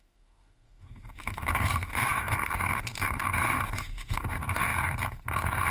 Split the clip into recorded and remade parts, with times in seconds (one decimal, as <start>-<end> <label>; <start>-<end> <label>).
0.0-5.7 remade